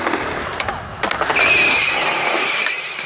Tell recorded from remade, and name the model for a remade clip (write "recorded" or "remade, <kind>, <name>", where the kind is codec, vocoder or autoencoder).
recorded